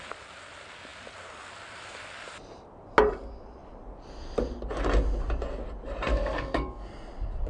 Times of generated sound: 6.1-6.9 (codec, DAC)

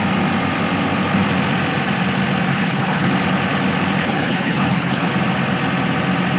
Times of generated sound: 2.5-3.1 (codec, HILCodec); 4.0-5.1

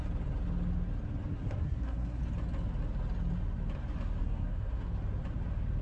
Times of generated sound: 1.3-2.2 (codec, SNAC); 4.2-4.9

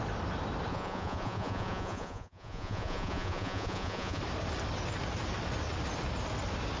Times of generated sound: 0.7-4.2 (vocoder, Vocos)